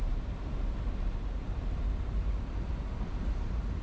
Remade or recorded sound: remade